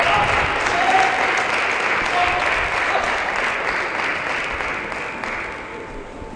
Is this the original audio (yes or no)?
yes